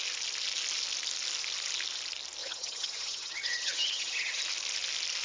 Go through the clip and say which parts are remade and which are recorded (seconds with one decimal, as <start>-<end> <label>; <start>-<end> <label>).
0.0-2.4 recorded; 2.4-4.4 remade; 4.4-5.2 recorded